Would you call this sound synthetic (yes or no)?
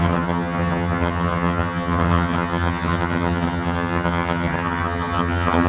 yes